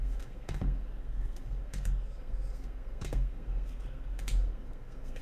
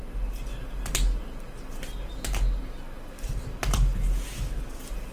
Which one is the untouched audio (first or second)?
second